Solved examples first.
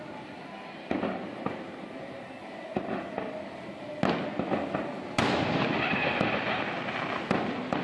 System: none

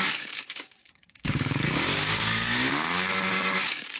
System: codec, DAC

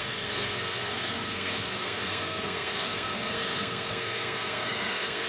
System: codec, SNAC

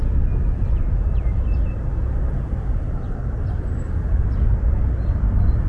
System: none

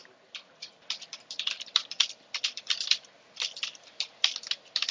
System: vocoder, BigVGAN v2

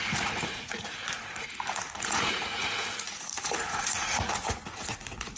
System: vocoder, Vocos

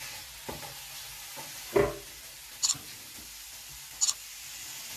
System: none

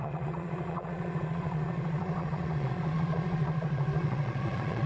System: vocoder, Vocos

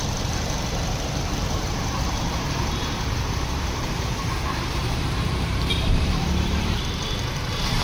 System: vocoder, BigVGAN v2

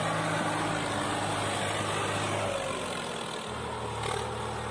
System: none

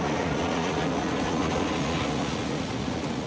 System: vocoder, Vocos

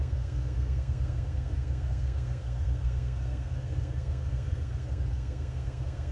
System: codec, SNAC